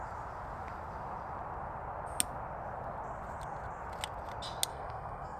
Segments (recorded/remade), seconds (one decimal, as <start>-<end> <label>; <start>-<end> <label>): 0.0-4.7 recorded; 4.7-5.4 remade